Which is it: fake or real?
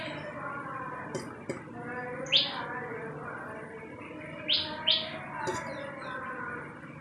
real